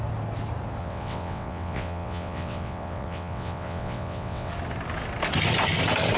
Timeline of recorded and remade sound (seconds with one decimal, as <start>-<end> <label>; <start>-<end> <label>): 0.0-0.8 recorded; 0.8-4.5 remade; 4.5-6.2 recorded